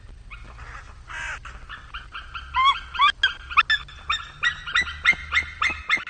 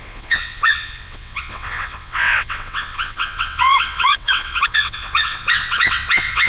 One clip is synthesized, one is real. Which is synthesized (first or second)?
second